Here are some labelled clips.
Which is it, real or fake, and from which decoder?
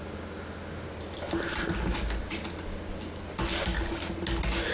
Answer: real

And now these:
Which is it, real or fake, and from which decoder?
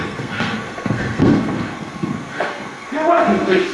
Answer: fake, codec, SNAC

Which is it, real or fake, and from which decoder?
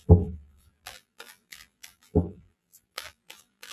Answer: fake, vocoder, BigVGAN v2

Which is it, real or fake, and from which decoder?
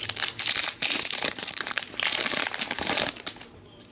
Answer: fake, vocoder, BigVGAN v2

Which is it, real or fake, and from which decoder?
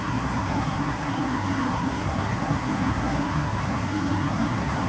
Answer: fake, codec, SNAC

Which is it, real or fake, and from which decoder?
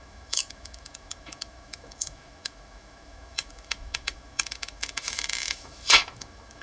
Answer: fake, autoencoder, DAC-VAE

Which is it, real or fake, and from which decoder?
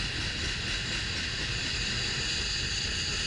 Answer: real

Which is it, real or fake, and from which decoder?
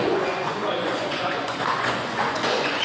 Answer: fake, vocoder, Vocos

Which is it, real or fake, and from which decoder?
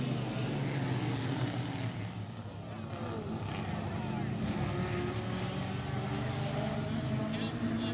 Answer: real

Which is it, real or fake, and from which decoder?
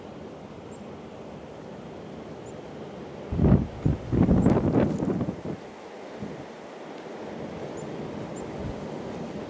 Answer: real